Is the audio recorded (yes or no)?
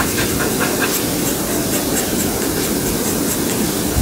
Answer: yes